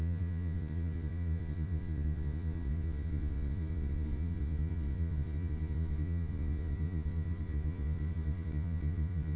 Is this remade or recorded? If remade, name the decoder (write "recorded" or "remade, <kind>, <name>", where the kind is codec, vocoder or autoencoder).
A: remade, vocoder, Vocos